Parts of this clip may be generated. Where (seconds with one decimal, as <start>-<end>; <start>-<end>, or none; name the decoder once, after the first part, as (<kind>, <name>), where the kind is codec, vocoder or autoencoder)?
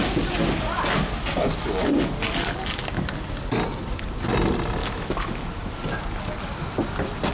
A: 4.8-5.5 (autoencoder, DAC-VAE)